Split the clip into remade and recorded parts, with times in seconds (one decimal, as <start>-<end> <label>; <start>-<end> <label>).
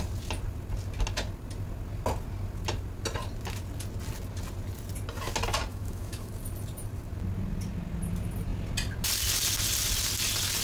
0.0-5.7 recorded; 5.7-6.3 remade; 6.3-10.6 recorded